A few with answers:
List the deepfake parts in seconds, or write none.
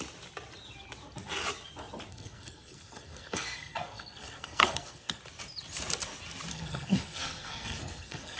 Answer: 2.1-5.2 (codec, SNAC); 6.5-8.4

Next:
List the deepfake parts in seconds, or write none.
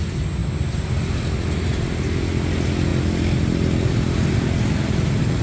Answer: none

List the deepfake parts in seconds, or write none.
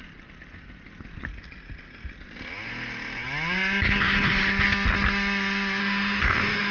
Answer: 5.8-6.7 (autoencoder, DAC-VAE)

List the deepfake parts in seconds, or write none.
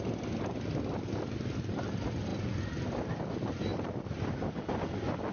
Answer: 3.7-4.4 (vocoder, BigVGAN v2)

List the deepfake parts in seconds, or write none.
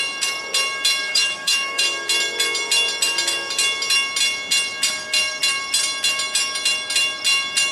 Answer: 1.1-1.8 (autoencoder, DAC-VAE)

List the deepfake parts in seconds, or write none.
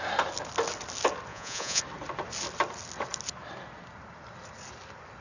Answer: 1.3-1.8 (vocoder, Vocos)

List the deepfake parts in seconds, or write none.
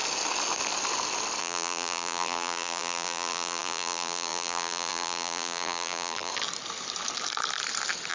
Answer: 1.4-6.3 (vocoder, BigVGAN v2)